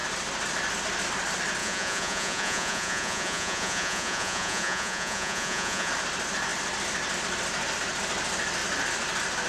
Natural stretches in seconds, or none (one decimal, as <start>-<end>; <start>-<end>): 0.0-1.6; 5.9-9.5